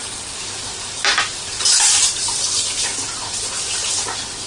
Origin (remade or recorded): recorded